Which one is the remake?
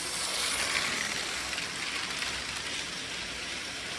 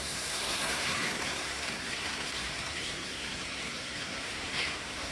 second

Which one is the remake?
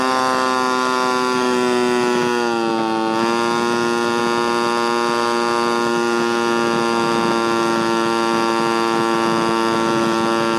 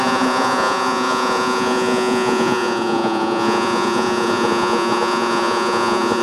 second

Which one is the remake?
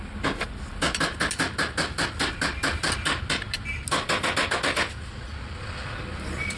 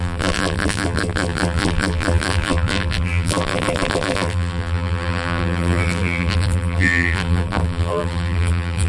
second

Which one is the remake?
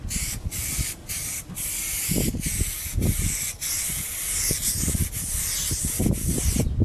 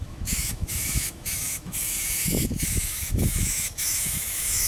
second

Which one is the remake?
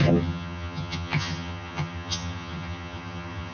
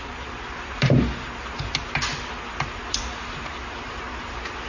first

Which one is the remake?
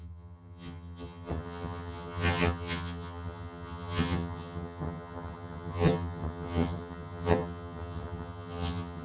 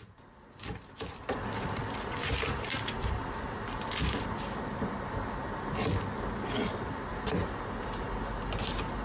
first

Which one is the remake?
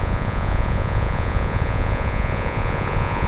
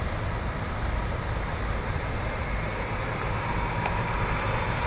first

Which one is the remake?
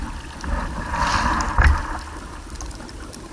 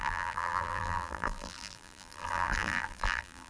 second